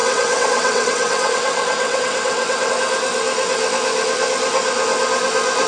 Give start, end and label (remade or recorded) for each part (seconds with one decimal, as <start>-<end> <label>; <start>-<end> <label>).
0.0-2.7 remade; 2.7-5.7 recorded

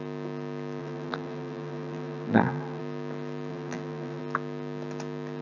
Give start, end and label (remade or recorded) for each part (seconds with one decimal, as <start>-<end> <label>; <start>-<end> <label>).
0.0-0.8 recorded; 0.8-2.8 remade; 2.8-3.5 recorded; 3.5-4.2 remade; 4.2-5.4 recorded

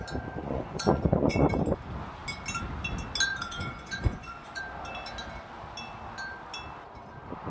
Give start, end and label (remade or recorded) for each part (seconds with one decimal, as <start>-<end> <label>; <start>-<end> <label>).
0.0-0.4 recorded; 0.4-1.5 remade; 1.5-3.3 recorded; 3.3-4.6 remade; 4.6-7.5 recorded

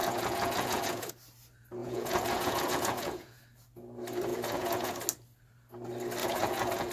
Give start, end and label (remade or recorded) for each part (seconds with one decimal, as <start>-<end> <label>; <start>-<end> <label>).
0.0-1.1 remade; 1.1-1.8 recorded; 1.8-3.4 remade; 3.4-4.3 recorded; 4.3-4.9 remade; 4.9-6.2 recorded; 6.2-6.9 remade

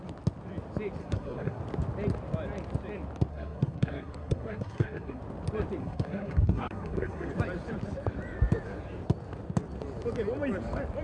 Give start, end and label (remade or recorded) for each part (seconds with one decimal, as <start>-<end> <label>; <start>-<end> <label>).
0.0-1.0 recorded; 1.0-1.6 remade; 1.6-3.3 recorded; 3.3-5.2 remade; 5.2-5.8 recorded; 5.8-7.3 remade; 7.3-11.0 recorded